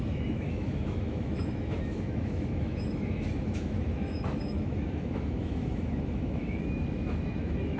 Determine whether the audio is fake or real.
fake